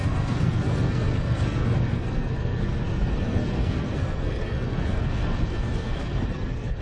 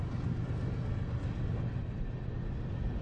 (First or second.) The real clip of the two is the second